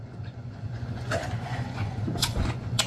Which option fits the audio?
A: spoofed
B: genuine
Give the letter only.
A